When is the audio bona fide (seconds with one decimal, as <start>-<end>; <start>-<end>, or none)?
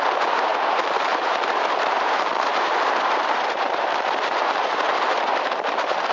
none